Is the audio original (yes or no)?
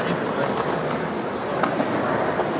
yes